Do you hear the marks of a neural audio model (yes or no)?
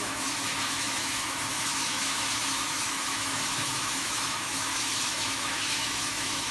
yes